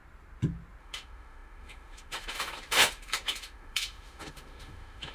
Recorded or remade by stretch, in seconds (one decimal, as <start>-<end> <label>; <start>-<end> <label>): 0.0-0.8 recorded; 0.8-5.1 remade